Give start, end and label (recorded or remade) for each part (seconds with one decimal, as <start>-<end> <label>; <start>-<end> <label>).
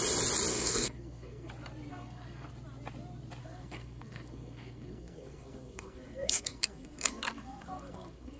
0.0-0.5 recorded; 0.5-1.5 remade; 1.5-1.9 recorded; 1.9-2.5 remade; 2.5-3.4 recorded; 3.4-8.4 remade